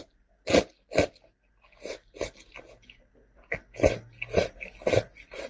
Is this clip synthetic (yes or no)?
no